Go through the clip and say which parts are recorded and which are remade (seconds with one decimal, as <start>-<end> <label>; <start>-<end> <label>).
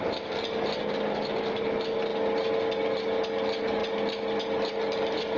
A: 0.0-2.1 remade; 2.1-3.0 recorded; 3.0-5.4 remade